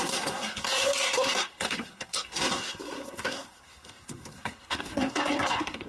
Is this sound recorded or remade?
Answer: remade